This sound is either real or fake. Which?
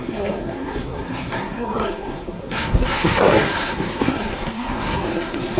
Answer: fake